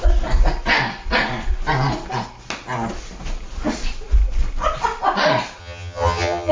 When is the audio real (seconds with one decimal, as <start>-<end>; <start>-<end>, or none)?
0.0-5.6